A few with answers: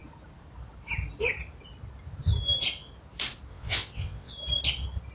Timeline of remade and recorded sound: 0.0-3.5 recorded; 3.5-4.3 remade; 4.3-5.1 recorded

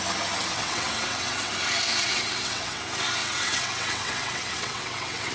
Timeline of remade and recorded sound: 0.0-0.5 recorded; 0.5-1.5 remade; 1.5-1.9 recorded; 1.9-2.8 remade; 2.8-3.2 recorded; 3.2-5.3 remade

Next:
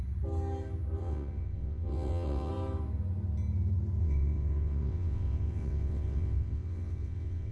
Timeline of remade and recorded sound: 0.0-1.0 recorded; 1.0-2.5 remade; 2.5-4.0 recorded; 4.0-7.5 remade

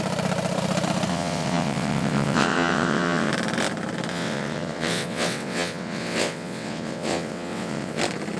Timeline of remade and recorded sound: 0.0-1.1 recorded; 1.1-3.3 remade; 3.3-4.1 recorded; 4.1-8.0 remade; 8.0-8.4 recorded

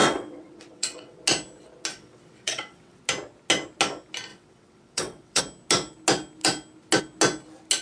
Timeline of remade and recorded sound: 0.0-1.2 remade; 1.2-1.9 recorded; 1.9-3.0 remade; 3.0-4.3 recorded; 4.3-5.4 remade; 5.4-7.8 recorded

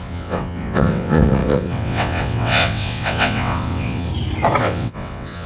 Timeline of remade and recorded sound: 0.0-4.1 remade; 4.1-4.6 recorded; 4.6-5.5 remade

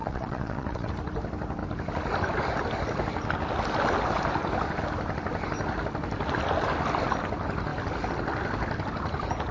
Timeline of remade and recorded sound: 0.0-0.9 remade; 0.9-9.5 recorded